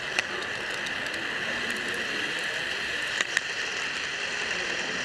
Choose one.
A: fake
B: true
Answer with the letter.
B